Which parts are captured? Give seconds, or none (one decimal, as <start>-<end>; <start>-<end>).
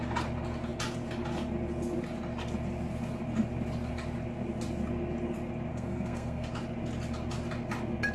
0.0-5.7; 6.5-8.1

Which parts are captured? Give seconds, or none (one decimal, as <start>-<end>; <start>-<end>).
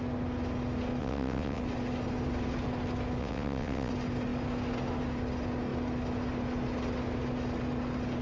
0.0-1.0; 1.6-3.2; 3.9-8.2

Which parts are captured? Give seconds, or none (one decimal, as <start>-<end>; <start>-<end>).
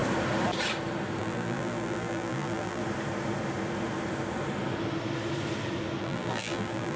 0.0-1.2; 2.8-6.0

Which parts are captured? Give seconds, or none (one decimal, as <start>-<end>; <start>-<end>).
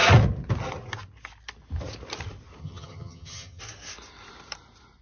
0.0-2.6; 3.6-5.0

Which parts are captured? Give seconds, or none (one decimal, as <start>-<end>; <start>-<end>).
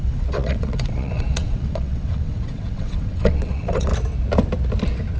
3.9-5.2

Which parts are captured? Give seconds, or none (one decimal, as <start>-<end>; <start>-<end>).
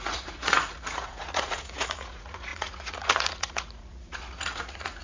none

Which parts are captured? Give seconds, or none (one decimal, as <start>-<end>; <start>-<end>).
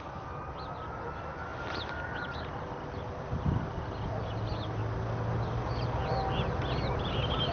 0.0-7.5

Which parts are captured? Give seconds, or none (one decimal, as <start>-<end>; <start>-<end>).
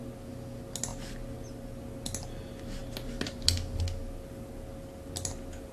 0.0-5.7